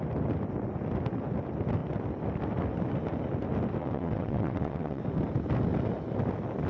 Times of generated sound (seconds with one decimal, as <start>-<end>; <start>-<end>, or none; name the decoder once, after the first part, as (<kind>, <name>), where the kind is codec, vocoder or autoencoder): 3.8-5.0 (vocoder, WaveNeXt)